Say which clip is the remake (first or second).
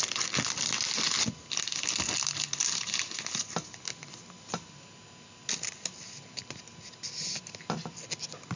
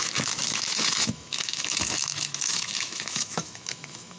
second